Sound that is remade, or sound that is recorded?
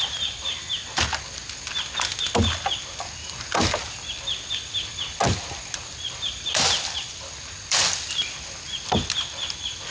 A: recorded